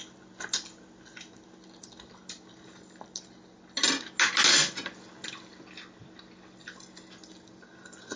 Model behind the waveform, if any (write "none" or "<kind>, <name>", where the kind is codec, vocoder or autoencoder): none